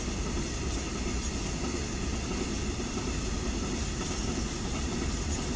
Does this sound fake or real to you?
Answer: real